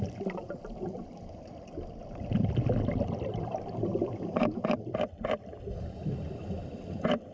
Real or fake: fake